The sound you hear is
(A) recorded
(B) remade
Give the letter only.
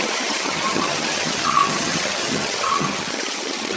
B